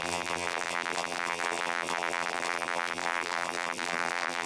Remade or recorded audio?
remade